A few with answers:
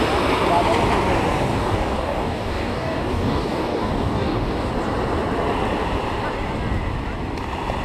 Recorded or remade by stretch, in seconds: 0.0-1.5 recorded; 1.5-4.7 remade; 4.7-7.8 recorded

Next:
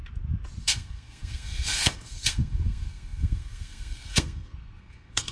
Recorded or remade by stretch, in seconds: 0.0-0.6 recorded; 0.6-5.3 remade

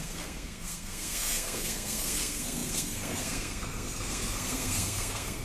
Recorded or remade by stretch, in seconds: 0.0-5.4 remade